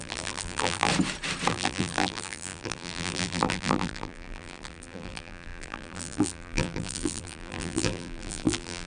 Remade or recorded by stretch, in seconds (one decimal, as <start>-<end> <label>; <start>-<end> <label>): 0.0-0.9 remade; 0.9-1.5 recorded; 1.5-8.9 remade